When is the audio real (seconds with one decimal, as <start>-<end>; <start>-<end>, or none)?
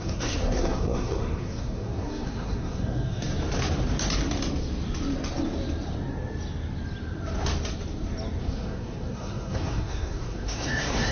3.3-8.4